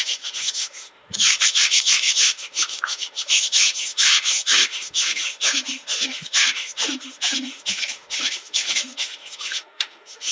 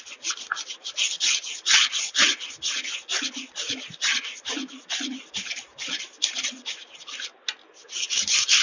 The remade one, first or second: first